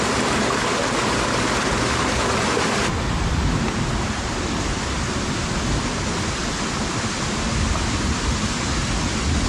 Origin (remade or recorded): recorded